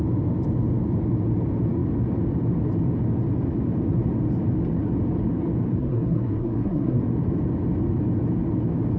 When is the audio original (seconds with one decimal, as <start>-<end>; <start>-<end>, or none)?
0.0-5.8; 7.0-9.0